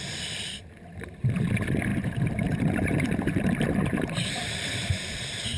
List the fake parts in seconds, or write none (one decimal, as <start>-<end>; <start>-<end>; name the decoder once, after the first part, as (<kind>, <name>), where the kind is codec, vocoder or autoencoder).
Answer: 1.9-5.6 (vocoder, BigVGAN v2)